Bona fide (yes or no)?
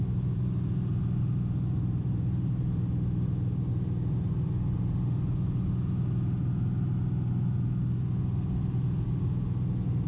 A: yes